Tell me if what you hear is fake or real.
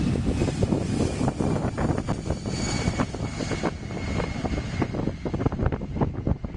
real